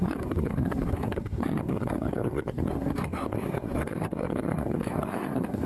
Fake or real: fake